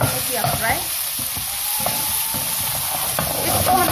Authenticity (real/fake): real